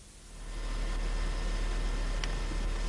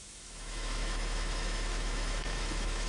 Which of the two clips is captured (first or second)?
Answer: first